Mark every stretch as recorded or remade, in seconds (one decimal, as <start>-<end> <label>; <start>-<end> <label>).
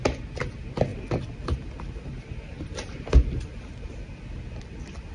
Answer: 0.0-5.1 recorded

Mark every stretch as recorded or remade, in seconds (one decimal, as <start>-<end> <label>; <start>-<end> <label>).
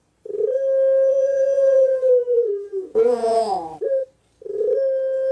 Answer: 0.0-1.1 recorded; 1.1-3.5 remade; 3.5-5.3 recorded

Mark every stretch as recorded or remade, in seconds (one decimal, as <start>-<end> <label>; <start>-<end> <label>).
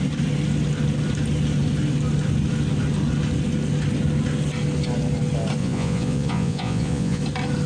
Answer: 0.0-5.6 recorded; 5.6-7.2 remade; 7.2-7.7 recorded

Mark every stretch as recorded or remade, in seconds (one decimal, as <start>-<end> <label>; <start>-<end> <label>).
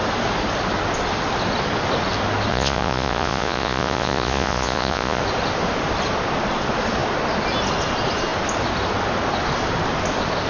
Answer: 0.0-2.5 recorded; 2.5-5.2 remade; 5.2-10.5 recorded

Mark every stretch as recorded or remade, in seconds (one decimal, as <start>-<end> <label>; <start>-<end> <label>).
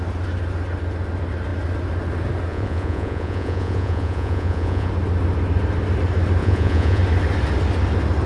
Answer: 0.0-2.5 recorded; 2.5-4.9 remade; 4.9-6.4 recorded; 6.4-7.0 remade; 7.0-8.3 recorded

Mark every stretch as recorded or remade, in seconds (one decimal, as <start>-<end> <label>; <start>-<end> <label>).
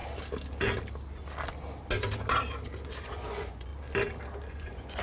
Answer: 0.0-3.0 recorded; 3.0-3.7 remade; 3.7-4.5 recorded; 4.5-5.0 remade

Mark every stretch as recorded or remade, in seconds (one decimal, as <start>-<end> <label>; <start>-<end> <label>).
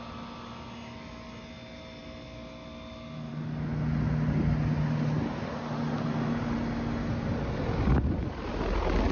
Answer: 0.0-9.1 recorded